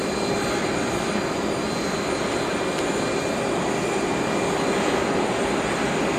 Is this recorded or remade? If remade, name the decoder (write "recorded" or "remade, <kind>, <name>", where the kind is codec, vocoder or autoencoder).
recorded